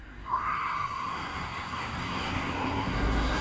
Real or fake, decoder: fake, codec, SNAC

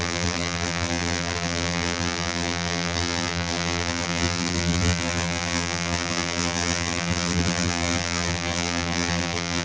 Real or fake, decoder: fake, vocoder, BigVGAN v2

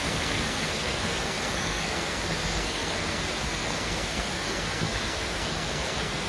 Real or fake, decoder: fake, codec, SNAC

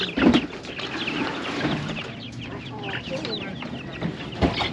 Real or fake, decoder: real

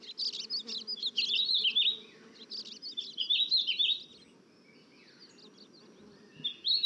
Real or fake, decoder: real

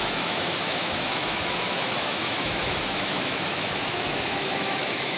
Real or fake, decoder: fake, autoencoder, DAC-VAE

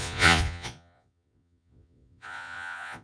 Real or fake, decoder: fake, vocoder, Vocos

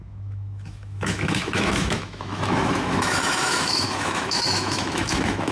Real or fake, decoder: fake, autoencoder, DAC-VAE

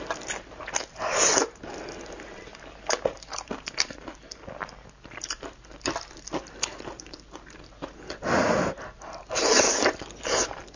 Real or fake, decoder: real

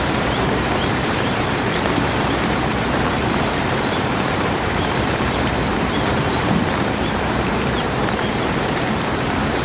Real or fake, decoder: fake, vocoder, BigVGAN v2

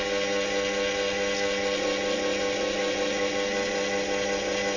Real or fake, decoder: real